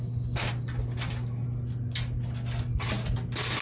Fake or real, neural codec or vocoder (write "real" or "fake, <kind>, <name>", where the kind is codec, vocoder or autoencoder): real